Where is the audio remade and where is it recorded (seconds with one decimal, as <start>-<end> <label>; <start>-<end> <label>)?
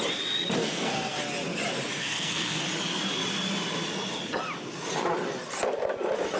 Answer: 0.0-0.6 recorded; 0.6-1.2 remade; 1.2-2.0 recorded; 2.0-2.6 remade; 2.6-6.4 recorded